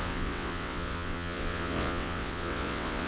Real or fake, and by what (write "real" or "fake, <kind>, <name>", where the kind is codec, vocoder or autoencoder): fake, vocoder, WaveNeXt